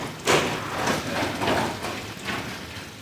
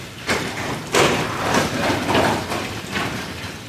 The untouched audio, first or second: first